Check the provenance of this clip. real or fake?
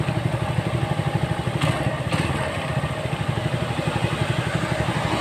real